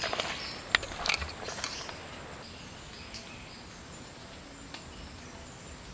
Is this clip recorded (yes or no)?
yes